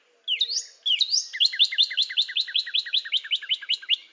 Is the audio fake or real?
real